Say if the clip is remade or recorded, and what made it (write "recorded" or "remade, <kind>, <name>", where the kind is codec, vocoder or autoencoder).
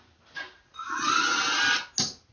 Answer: recorded